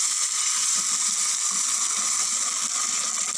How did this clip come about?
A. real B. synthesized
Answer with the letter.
A